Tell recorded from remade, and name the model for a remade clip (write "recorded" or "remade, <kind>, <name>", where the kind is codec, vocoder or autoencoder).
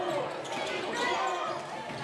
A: recorded